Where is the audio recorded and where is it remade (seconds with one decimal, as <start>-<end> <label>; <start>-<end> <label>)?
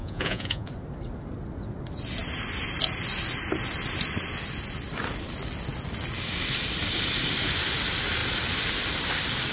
0.0-0.7 remade; 0.7-9.5 recorded